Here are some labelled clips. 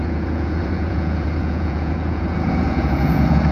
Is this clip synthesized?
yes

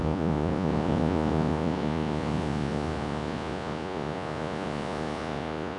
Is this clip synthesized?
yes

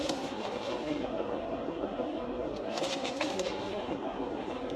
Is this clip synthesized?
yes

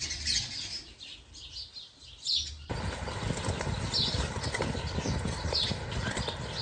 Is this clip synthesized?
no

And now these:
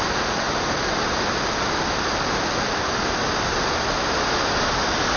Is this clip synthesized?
no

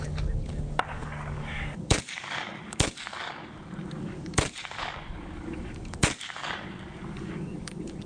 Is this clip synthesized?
yes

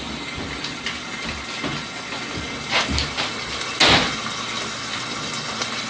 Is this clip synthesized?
no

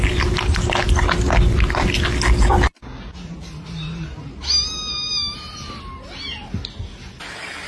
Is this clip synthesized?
no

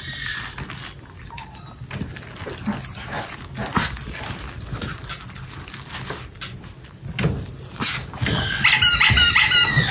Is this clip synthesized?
no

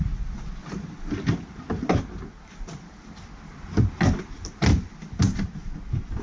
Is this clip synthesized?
no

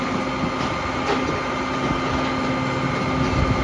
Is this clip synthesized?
no